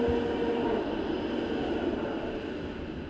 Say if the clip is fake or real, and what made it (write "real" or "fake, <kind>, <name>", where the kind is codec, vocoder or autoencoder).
real